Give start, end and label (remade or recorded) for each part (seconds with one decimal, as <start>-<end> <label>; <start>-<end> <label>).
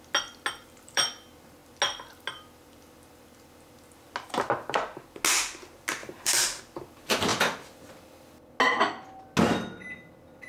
0.0-0.6 recorded; 0.6-1.1 remade; 1.1-6.0 recorded; 6.0-6.6 remade; 6.6-10.5 recorded